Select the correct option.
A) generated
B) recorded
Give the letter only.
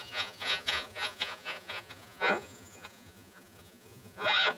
A